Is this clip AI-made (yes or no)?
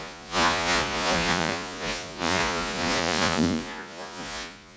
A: yes